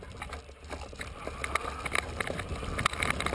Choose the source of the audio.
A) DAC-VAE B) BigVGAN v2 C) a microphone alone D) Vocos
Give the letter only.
C